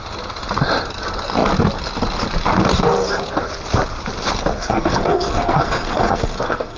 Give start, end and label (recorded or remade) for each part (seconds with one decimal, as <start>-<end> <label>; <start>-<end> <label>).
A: 0.0-4.5 recorded; 4.5-6.8 remade